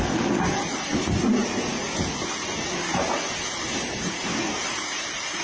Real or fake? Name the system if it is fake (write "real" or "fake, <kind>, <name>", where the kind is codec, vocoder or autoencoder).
real